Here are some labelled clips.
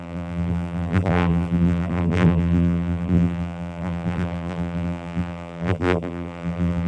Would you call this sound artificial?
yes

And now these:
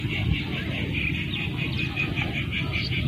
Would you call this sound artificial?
no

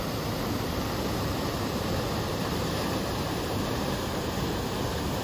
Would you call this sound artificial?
yes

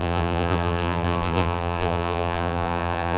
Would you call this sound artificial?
yes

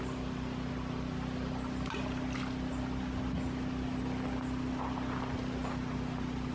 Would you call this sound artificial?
no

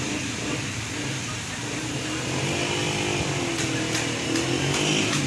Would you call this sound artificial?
no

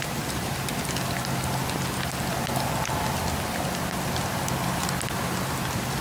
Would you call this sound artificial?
no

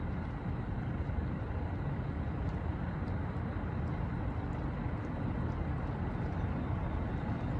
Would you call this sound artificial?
no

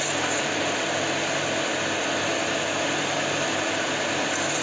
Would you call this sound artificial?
no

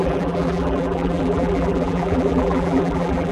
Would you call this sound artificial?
yes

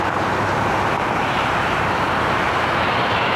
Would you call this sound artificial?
yes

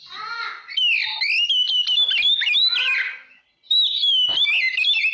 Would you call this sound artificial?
no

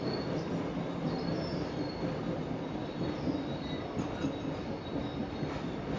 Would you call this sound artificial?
no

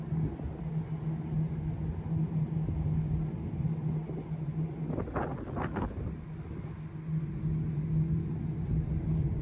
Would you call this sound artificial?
no